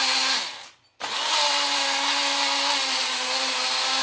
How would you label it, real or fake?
real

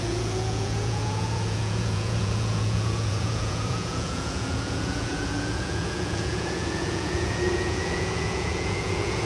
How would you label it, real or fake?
fake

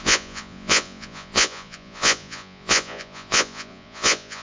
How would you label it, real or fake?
fake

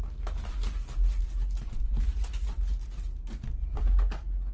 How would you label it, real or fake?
real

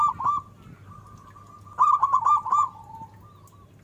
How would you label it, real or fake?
real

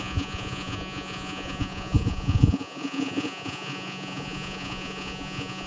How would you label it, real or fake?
fake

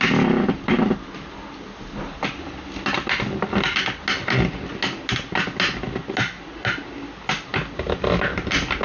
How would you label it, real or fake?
real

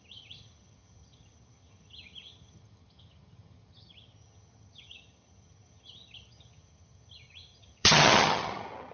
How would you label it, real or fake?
fake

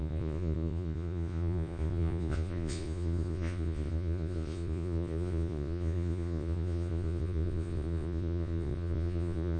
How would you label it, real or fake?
fake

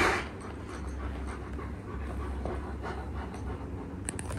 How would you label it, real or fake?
real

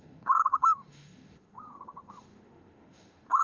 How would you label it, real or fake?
fake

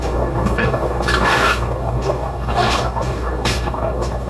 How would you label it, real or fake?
fake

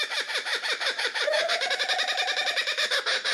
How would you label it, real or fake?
fake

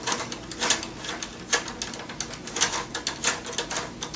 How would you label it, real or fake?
real